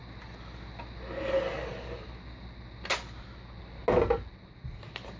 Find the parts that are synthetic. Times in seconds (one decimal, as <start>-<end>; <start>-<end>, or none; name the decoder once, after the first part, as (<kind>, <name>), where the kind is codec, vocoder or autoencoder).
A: none